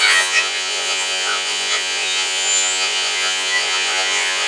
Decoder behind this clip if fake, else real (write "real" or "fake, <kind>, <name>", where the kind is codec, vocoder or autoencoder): fake, vocoder, Vocos